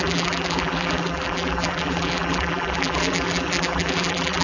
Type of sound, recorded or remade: remade